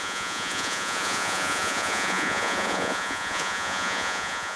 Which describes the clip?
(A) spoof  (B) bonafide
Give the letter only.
A